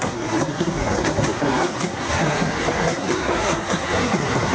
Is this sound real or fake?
fake